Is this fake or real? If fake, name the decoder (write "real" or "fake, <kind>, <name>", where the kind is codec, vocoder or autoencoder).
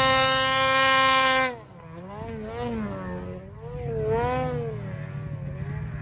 real